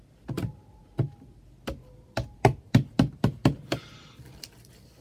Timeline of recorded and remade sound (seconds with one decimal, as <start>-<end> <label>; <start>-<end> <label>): 0.0-5.0 recorded